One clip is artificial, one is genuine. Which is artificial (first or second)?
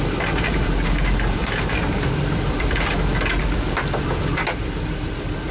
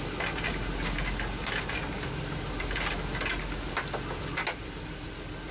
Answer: first